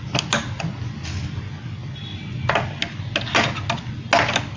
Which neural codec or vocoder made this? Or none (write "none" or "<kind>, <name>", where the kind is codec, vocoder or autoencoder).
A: none